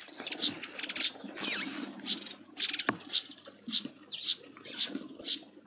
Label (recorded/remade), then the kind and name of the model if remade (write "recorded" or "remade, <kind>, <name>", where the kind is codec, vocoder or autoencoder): recorded